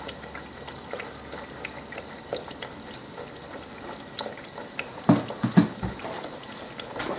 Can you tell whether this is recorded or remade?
recorded